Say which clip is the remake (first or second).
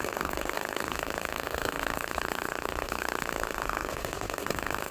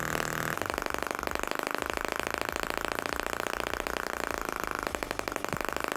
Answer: first